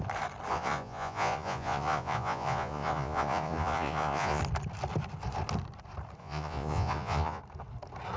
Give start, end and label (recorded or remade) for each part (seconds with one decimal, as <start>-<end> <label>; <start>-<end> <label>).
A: 0.0-0.5 recorded; 0.5-4.4 remade; 4.4-6.2 recorded; 6.2-7.4 remade; 7.4-8.2 recorded